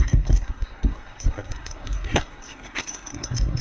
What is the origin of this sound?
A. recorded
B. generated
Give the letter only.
B